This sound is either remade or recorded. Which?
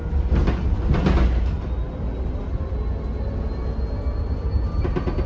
recorded